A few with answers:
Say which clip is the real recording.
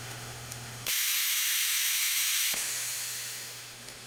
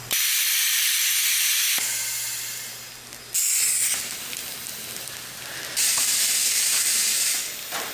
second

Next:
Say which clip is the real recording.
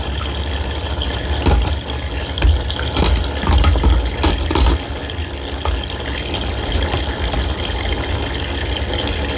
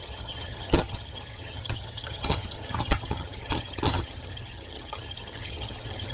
first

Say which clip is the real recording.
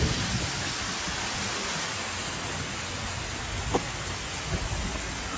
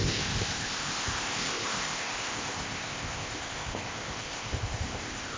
first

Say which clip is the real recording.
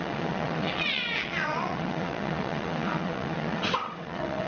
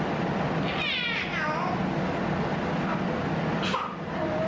second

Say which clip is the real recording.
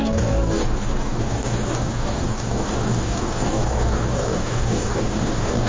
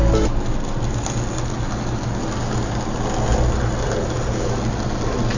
second